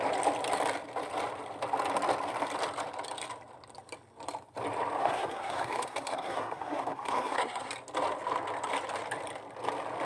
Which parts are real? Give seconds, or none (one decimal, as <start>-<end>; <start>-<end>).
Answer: 0.0-5.0; 7.7-10.1